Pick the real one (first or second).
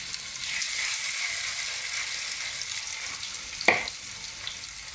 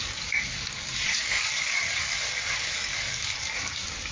first